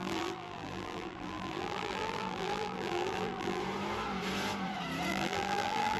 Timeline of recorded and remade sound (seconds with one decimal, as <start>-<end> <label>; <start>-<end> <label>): 0.0-3.6 remade; 3.6-5.1 recorded; 5.1-6.0 remade